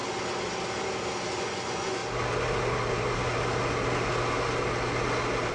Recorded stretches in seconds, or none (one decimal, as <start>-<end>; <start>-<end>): 0.0-1.4; 2.0-5.5